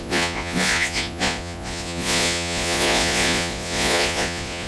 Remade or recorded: remade